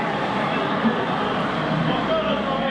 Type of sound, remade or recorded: remade